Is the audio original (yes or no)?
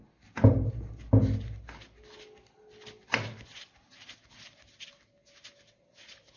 yes